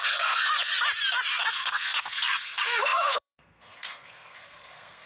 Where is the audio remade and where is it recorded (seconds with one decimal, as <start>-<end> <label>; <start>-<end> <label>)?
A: 0.0-0.7 remade; 0.7-1.5 recorded; 1.5-5.1 remade